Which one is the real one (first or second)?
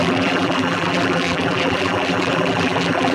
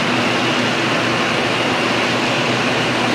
second